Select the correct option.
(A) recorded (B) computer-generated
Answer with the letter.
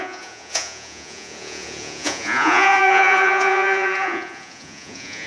B